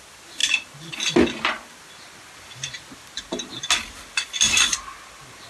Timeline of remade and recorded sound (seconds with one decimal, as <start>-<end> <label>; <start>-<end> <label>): 0.0-5.5 recorded